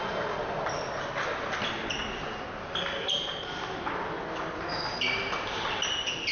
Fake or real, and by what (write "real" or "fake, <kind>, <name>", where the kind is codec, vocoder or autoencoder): real